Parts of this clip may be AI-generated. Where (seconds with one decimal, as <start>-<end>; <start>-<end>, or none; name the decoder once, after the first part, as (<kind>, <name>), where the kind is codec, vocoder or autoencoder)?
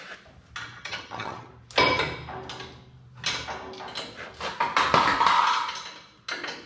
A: 0.8-1.5 (vocoder, HiFi-GAN)